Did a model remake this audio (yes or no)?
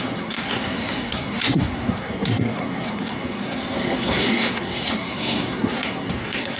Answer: yes